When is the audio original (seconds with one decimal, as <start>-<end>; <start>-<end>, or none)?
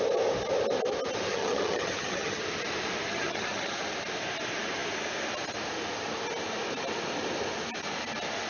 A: 0.0-1.3; 2.4-3.1; 3.8-8.5